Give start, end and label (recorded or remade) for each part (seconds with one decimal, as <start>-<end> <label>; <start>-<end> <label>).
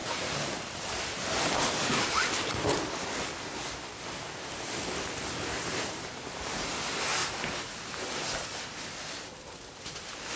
0.0-1.3 remade; 1.3-5.5 recorded; 5.5-6.7 remade; 6.7-10.4 recorded